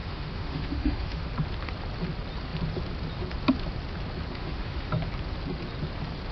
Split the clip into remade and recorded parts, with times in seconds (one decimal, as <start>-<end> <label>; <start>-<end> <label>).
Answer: 0.0-1.3 remade; 1.3-4.3 recorded; 4.3-4.9 remade; 4.9-6.3 recorded